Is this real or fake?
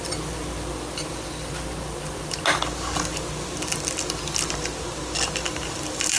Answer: real